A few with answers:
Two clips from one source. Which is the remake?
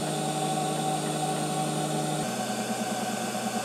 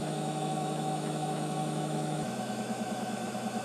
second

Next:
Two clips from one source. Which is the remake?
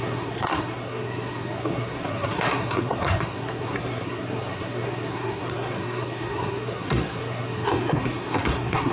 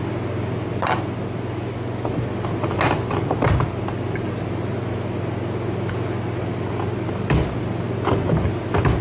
first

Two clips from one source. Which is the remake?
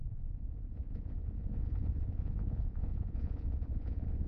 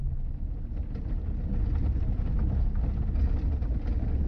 first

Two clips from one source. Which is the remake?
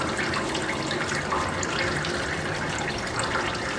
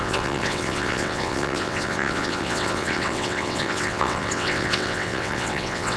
second